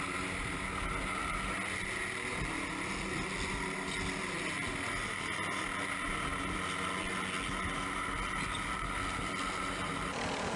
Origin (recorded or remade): recorded